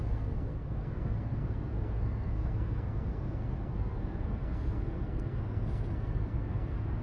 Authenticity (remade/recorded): remade